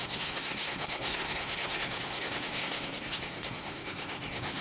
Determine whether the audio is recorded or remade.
remade